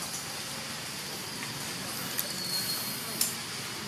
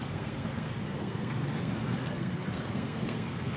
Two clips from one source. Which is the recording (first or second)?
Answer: first